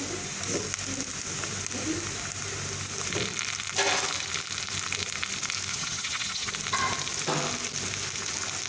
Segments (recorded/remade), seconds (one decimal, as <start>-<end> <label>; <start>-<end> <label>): 0.0-5.7 recorded; 5.7-6.5 remade; 6.5-8.7 recorded